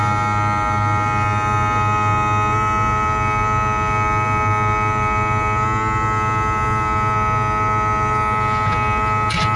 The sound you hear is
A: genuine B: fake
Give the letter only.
A